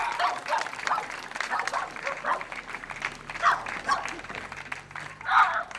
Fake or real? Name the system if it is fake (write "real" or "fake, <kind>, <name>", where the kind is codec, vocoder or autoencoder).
real